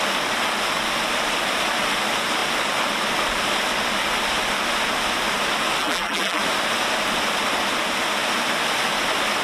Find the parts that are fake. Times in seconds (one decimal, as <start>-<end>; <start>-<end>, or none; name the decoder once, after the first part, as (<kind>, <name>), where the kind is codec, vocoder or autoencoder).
5.8-6.4 (vocoder, BigVGAN v2)